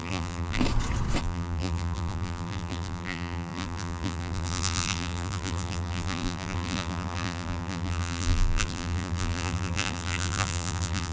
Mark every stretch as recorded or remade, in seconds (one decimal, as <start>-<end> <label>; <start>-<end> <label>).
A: 0.0-0.6 remade; 0.6-1.2 recorded; 1.2-11.1 remade